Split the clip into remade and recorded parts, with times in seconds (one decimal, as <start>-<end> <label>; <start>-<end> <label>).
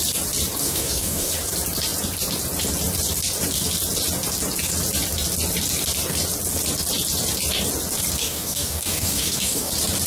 0.0-0.6 recorded; 0.6-1.3 remade; 1.3-8.2 recorded; 8.2-9.7 remade; 9.7-10.1 recorded